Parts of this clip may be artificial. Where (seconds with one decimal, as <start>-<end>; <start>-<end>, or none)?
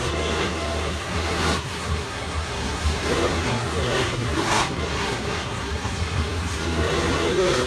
0.0-7.7